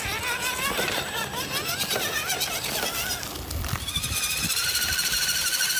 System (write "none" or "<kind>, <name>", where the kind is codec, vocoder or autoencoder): none